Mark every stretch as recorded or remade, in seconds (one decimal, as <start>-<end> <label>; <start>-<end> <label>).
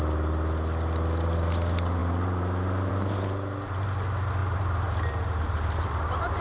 0.0-2.0 recorded; 2.0-2.9 remade; 2.9-4.4 recorded; 4.4-6.4 remade